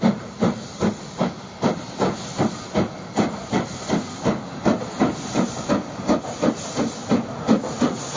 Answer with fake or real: real